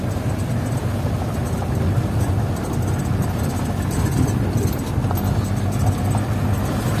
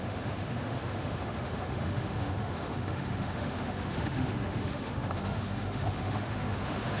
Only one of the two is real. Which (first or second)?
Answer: first